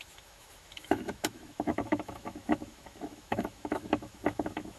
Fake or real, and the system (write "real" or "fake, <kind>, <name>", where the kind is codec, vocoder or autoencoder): fake, autoencoder, DAC-VAE